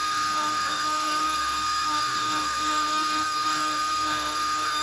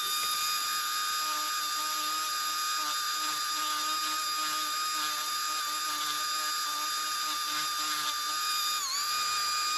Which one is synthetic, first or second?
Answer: first